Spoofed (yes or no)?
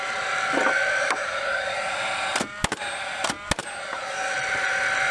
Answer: no